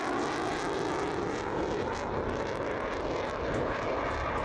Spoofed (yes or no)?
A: no